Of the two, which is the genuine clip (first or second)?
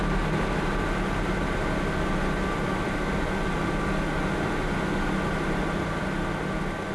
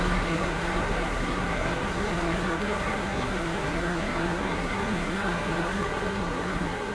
first